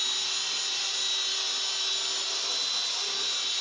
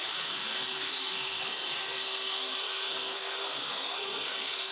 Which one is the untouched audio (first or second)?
first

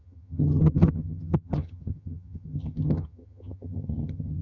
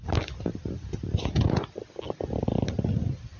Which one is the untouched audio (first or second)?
second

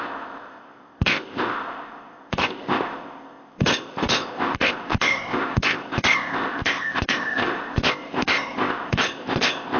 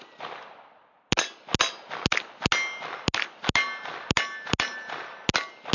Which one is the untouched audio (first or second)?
second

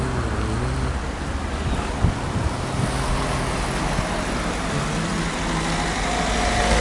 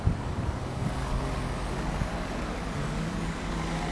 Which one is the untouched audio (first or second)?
first